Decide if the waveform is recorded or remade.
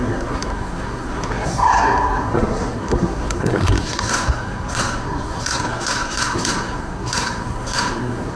remade